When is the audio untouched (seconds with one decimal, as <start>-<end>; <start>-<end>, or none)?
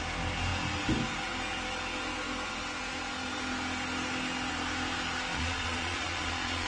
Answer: 0.0-5.3